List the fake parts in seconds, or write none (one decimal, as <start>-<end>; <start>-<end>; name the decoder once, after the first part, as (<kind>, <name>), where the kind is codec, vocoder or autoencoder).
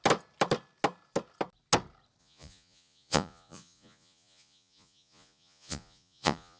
2.2-6.6 (vocoder, Vocos)